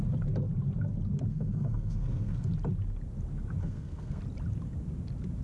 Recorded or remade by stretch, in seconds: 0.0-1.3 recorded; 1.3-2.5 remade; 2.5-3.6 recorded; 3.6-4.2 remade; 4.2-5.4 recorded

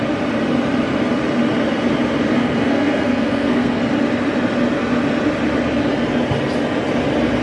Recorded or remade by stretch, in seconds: 0.0-2.3 recorded; 2.3-3.8 remade; 3.8-7.4 recorded

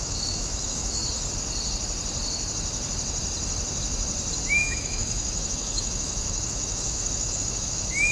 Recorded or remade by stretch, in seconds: 0.0-1.0 remade; 1.0-4.5 recorded; 4.5-8.1 remade

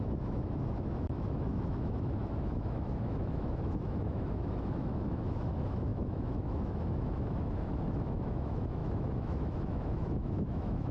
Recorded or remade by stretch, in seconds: 0.0-10.9 remade

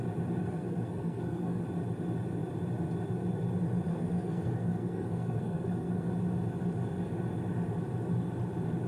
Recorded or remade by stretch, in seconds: 0.0-0.4 recorded; 0.4-1.6 remade; 1.6-3.9 recorded; 3.9-6.1 remade; 6.1-8.9 recorded

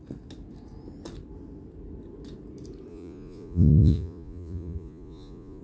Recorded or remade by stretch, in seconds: 0.0-2.9 recorded; 2.9-5.6 remade